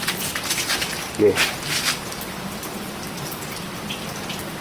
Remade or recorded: remade